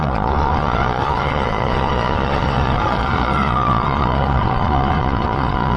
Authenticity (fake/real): fake